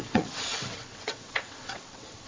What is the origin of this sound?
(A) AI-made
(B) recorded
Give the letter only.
A